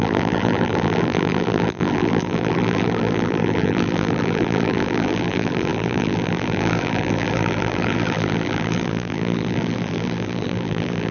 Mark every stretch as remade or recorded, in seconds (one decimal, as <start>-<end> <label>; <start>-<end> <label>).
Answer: 0.0-11.1 remade